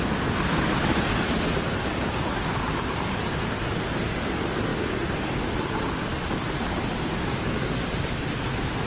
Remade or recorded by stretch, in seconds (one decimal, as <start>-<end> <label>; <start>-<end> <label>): 0.0-8.9 recorded